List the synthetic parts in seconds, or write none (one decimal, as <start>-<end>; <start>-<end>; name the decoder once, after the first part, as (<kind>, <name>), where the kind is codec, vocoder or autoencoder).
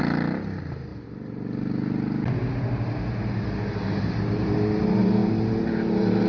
none